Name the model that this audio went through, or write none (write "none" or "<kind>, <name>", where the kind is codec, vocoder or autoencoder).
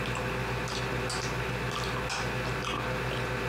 none